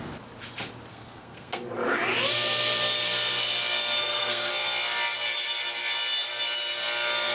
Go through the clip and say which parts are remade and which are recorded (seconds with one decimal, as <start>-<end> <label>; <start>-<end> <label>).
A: 0.0-0.9 recorded; 0.9-1.6 remade; 1.6-4.0 recorded; 4.0-4.5 remade; 4.5-7.3 recorded